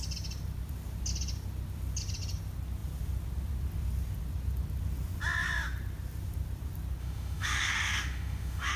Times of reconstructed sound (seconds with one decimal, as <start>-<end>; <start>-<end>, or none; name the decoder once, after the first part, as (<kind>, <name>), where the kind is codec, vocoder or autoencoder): 7.0-8.8 (autoencoder, DAC-VAE)